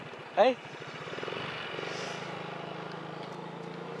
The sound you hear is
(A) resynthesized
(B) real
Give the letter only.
B